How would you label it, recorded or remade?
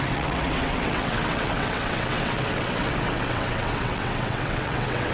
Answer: remade